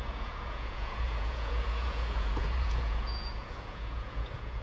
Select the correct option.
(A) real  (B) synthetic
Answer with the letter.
B